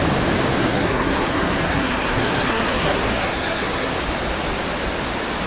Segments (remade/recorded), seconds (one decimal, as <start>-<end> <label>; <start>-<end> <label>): 0.0-0.6 recorded; 0.6-3.9 remade; 3.9-5.5 recorded